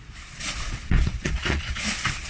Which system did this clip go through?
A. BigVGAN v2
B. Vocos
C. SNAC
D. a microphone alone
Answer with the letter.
B